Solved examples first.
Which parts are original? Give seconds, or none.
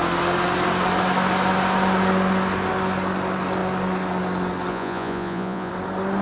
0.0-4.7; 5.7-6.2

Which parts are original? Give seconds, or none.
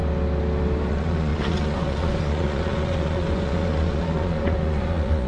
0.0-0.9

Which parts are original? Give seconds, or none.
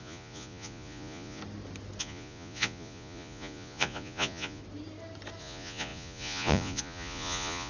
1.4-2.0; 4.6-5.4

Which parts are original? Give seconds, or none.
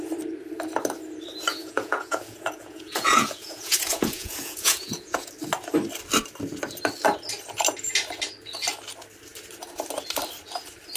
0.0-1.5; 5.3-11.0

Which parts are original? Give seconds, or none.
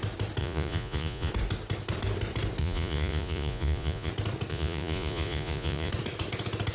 0.0-0.4; 1.3-2.6; 4.1-4.5; 5.9-6.7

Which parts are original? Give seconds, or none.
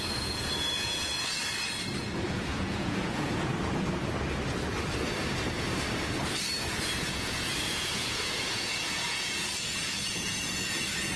1.4-2.0; 3.5-6.7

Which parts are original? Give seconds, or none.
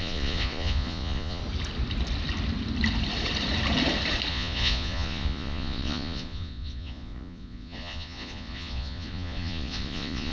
1.4-4.3